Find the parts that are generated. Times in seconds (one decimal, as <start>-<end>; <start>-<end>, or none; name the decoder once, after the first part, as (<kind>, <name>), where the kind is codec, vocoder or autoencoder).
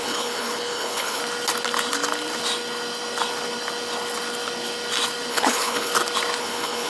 0.0-1.2 (codec, HILCodec); 5.3-5.9; 6.4-6.9